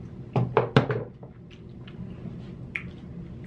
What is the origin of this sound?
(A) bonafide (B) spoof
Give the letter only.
A